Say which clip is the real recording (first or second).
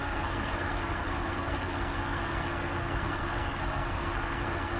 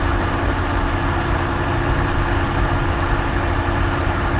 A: second